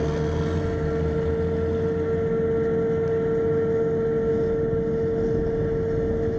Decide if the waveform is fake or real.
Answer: real